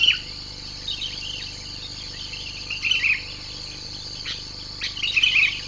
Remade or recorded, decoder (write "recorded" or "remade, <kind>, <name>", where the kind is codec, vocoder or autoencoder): recorded